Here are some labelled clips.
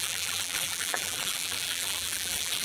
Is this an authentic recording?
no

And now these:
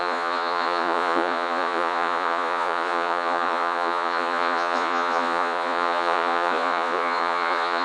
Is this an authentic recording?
no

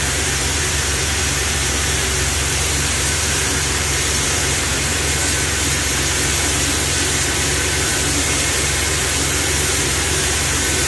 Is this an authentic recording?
no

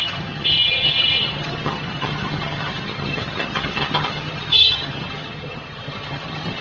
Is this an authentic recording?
no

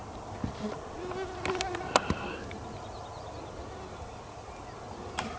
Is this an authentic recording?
yes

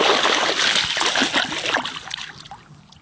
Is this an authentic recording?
yes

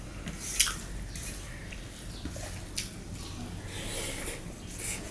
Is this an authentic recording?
yes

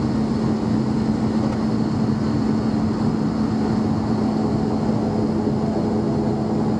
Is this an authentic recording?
yes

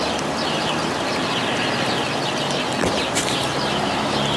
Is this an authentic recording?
yes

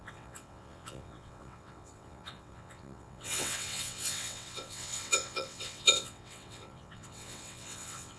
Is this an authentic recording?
no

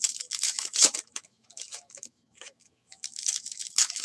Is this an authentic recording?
no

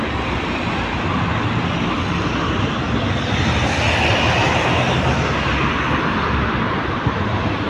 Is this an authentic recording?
yes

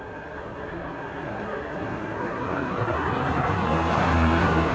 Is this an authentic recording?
no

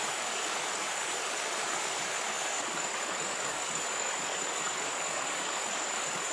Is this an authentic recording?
no